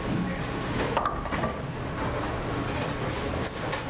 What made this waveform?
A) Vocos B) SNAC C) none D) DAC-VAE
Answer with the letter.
C